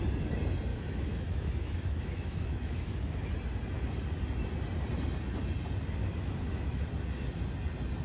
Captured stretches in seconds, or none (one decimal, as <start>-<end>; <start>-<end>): 0.0-0.7; 3.3-6.0; 6.8-8.0